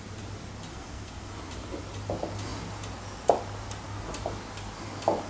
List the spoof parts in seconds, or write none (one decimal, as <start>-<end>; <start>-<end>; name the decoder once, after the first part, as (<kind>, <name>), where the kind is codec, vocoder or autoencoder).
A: 0.7-1.3 (codec, SNAC)